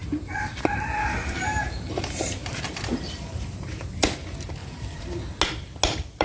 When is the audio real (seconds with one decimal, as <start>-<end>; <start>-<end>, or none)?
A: 3.7-4.6; 5.2-6.2